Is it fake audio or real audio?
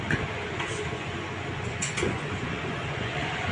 fake